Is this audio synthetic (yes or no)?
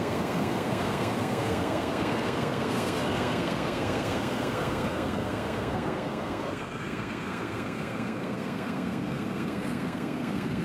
yes